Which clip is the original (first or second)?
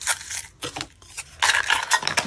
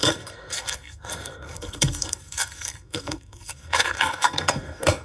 first